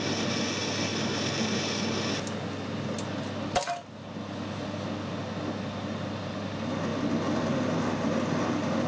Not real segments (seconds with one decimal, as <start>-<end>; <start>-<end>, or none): none